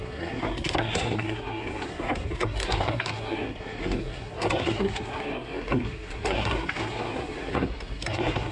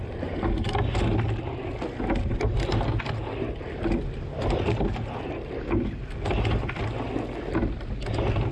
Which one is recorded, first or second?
second